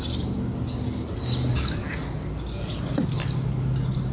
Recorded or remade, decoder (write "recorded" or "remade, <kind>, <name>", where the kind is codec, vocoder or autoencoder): recorded